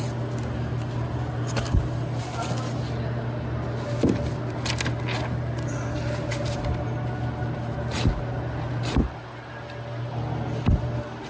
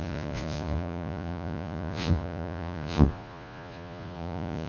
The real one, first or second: first